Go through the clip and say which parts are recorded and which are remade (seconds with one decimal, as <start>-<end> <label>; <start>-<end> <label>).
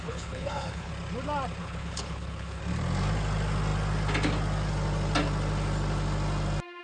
0.0-0.9 remade; 0.9-1.6 recorded; 1.6-2.6 remade; 2.6-6.8 recorded